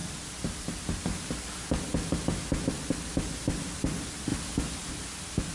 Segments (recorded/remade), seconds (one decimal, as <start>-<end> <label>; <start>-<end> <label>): 0.0-1.0 remade; 1.0-3.1 recorded; 3.1-3.8 remade; 3.8-4.3 recorded; 4.3-4.9 remade; 4.9-5.5 recorded

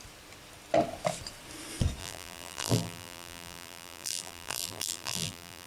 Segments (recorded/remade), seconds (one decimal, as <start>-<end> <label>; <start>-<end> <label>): 0.0-2.0 recorded; 2.0-5.7 remade

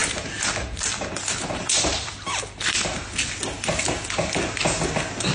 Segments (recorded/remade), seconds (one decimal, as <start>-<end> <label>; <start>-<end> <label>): 0.0-3.2 remade; 3.2-5.3 recorded

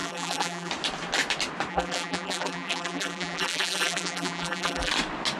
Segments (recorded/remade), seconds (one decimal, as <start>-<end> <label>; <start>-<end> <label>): 0.0-0.7 remade; 0.7-1.7 recorded; 1.7-4.9 remade; 4.9-5.4 recorded

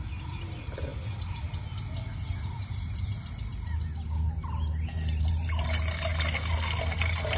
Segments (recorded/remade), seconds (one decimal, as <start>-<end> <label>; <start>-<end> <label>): 0.0-7.4 recorded

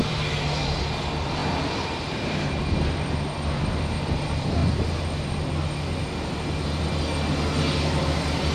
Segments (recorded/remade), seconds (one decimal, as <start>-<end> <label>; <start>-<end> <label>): 0.0-1.4 remade; 1.4-2.0 recorded; 2.0-4.6 remade; 4.6-8.0 recorded; 8.0-8.5 remade

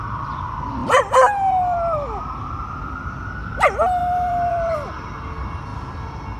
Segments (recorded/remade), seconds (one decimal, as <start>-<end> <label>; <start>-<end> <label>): 0.0-0.8 recorded; 0.8-2.2 remade; 2.2-4.0 recorded; 4.0-4.7 remade; 4.7-6.4 recorded

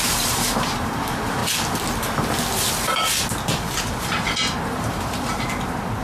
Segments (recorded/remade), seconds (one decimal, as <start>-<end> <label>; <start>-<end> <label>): 0.0-1.4 remade; 1.4-3.6 recorded; 3.6-6.0 remade